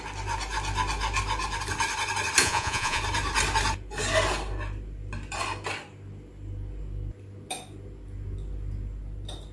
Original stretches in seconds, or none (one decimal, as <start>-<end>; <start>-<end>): 0.0-2.4; 3.0-9.5